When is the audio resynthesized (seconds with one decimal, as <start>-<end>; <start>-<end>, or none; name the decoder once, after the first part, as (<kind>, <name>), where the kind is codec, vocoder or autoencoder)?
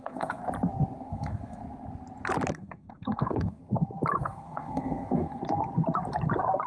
0.0-0.4 (codec, SNAC); 1.1-1.6; 2.5-3.6; 4.2-5.4